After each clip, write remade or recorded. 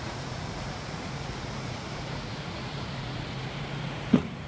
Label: remade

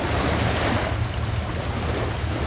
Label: recorded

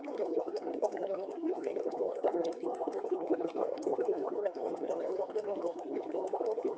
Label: remade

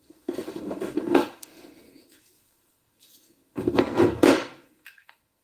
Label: remade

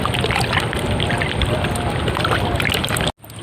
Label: recorded